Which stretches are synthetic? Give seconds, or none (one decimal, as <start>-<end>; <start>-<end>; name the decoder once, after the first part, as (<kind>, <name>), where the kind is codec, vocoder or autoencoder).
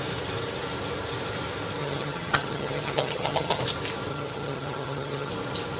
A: 1.8-3.6 (vocoder, HiFi-GAN); 4.1-5.3